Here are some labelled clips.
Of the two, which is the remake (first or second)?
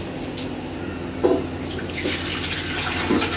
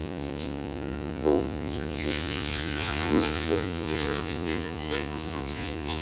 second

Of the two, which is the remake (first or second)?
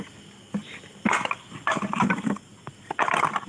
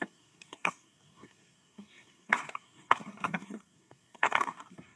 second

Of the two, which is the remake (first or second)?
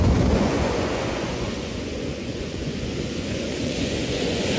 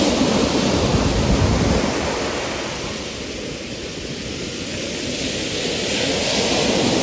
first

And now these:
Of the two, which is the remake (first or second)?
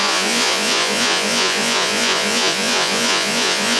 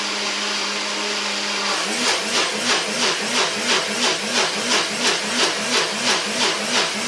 first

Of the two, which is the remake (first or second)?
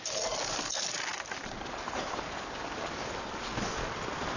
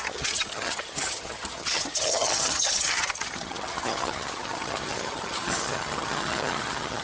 second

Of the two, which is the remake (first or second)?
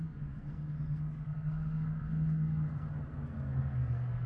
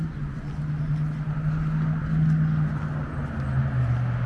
first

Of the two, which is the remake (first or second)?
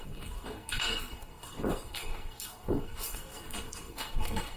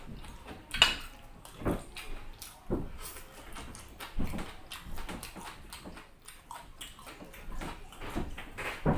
first